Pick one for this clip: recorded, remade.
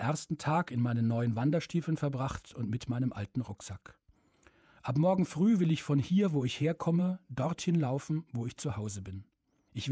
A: remade